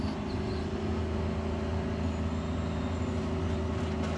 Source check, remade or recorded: recorded